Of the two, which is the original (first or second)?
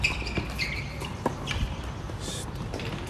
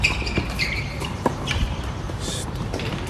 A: first